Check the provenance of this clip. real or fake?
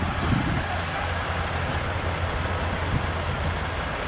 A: real